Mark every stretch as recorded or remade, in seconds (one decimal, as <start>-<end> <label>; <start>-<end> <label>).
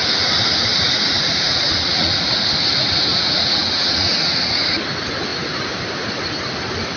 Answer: 0.0-0.7 recorded; 0.7-2.2 remade; 2.2-3.1 recorded; 3.1-4.8 remade; 4.8-7.0 recorded